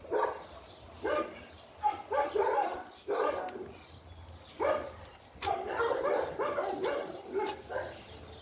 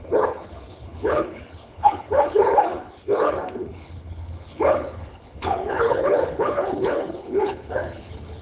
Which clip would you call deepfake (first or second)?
second